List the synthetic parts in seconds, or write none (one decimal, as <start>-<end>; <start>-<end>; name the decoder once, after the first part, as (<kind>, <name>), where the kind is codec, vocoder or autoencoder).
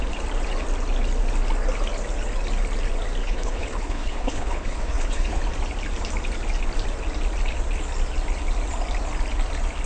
3.2-5.4 (codec, HILCodec)